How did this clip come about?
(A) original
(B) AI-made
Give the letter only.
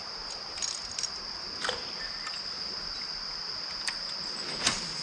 A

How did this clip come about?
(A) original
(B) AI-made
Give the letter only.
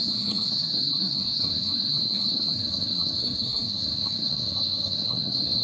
B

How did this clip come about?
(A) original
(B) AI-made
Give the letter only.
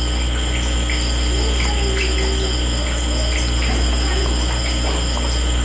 A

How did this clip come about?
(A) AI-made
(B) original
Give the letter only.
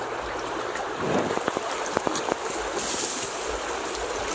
B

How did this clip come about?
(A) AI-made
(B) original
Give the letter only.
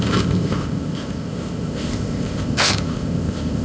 A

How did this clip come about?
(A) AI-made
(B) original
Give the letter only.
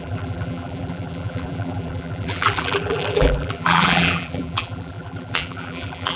A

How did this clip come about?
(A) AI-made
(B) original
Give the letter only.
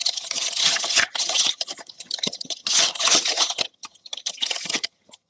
A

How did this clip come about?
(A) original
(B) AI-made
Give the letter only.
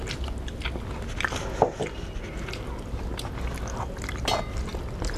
A